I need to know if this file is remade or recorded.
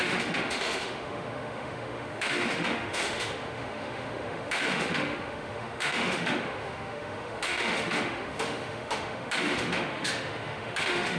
remade